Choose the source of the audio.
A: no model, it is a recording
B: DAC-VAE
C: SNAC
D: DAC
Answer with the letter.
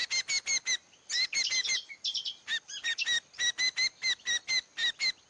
A